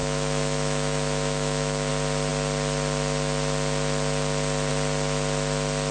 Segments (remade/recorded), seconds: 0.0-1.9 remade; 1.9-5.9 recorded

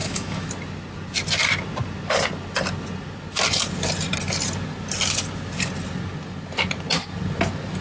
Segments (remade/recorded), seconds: 0.0-0.5 remade; 0.5-7.8 recorded

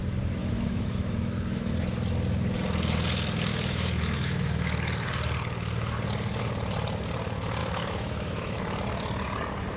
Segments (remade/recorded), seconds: 0.0-0.4 recorded; 0.4-1.7 remade; 1.7-3.5 recorded; 3.5-4.7 remade; 4.7-7.6 recorded; 7.6-8.6 remade; 8.6-9.8 recorded

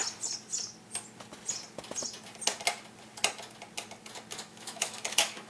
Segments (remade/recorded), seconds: 0.0-4.5 recorded; 4.5-5.5 remade

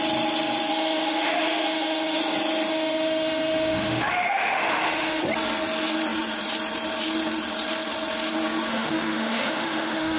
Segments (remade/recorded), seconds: 0.0-0.7 recorded; 0.7-2.2 remade; 2.2-2.7 recorded; 2.7-5.2 remade; 5.2-8.7 recorded; 8.7-10.2 remade

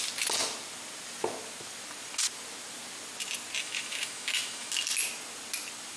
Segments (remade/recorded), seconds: 0.0-3.6 recorded; 3.6-4.7 remade; 4.7-6.0 recorded

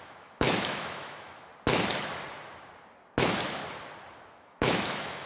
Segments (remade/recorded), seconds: 0.0-1.5 remade; 1.5-3.2 recorded; 3.2-3.6 remade; 3.6-4.4 recorded; 4.4-5.3 remade

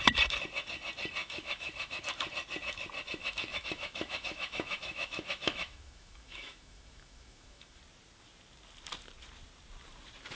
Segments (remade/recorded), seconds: 0.0-1.2 recorded; 1.2-2.0 remade; 2.0-3.2 recorded; 3.2-7.8 remade; 7.8-10.4 recorded